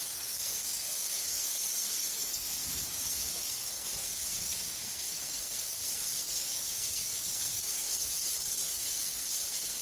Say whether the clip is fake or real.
fake